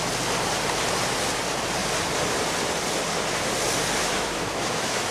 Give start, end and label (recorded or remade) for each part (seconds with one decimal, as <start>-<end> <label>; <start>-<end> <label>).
0.0-4.0 recorded; 4.0-5.1 remade